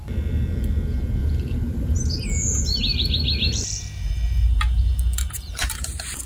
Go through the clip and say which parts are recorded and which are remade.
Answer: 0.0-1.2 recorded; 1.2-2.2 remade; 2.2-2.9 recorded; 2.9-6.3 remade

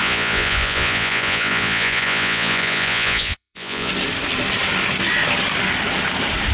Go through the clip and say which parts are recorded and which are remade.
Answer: 0.0-3.9 remade; 3.9-6.5 recorded

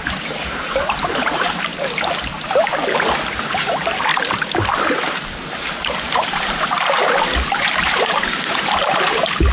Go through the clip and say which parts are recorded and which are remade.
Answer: 0.0-1.7 remade; 1.7-3.3 recorded; 3.3-4.1 remade; 4.1-5.0 recorded; 5.0-7.0 remade; 7.0-7.6 recorded; 7.6-9.5 remade

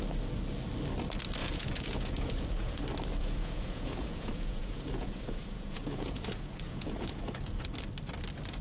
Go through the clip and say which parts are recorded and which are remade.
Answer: 0.0-1.4 recorded; 1.4-2.8 remade; 2.8-3.2 recorded; 3.2-7.6 remade; 7.6-8.6 recorded

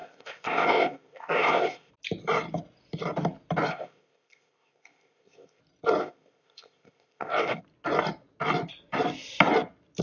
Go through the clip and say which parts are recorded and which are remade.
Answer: 0.0-1.9 remade; 1.9-3.7 recorded; 3.7-5.6 remade; 5.6-6.0 recorded; 6.0-7.6 remade; 7.6-10.0 recorded

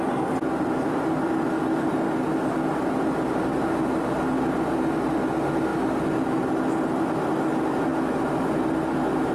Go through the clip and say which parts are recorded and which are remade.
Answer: 0.0-9.3 recorded

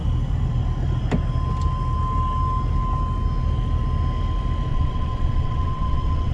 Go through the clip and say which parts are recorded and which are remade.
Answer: 0.0-4.7 recorded; 4.7-6.3 remade